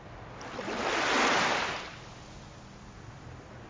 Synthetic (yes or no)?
no